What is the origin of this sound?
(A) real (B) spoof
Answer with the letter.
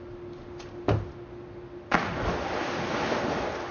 A